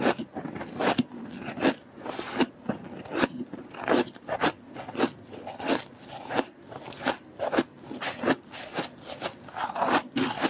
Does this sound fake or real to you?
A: real